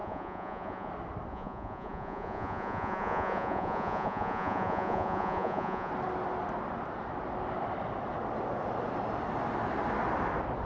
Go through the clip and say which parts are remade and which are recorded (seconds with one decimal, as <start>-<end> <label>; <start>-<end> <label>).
0.0-0.9 remade; 0.9-1.3 recorded; 1.3-5.9 remade; 5.9-10.7 recorded